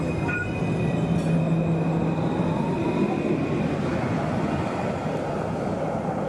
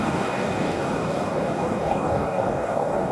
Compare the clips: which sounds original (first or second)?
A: first